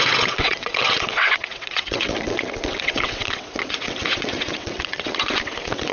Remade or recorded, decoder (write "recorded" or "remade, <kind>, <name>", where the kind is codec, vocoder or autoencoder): remade, vocoder, WaveNeXt